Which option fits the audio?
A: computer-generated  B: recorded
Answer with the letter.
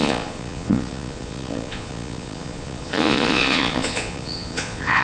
A